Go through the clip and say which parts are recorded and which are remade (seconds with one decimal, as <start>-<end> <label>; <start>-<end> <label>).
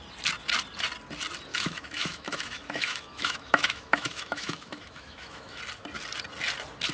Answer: 0.0-1.5 recorded; 1.5-5.6 remade; 5.6-6.9 recorded